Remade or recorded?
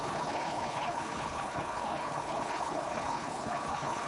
remade